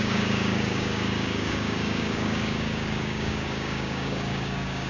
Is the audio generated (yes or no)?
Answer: yes